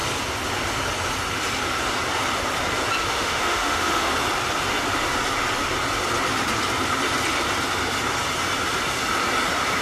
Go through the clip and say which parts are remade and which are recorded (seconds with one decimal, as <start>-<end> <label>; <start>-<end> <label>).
0.0-3.0 recorded; 3.0-4.1 remade; 4.1-9.8 recorded